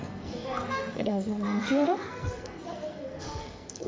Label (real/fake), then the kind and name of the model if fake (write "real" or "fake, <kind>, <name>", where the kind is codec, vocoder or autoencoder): fake, codec, SNAC